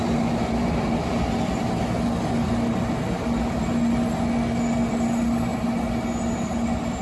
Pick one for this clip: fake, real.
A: real